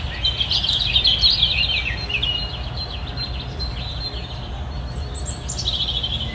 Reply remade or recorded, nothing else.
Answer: recorded